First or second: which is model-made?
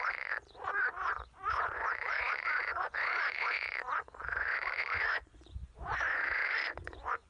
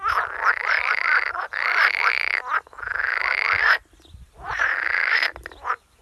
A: first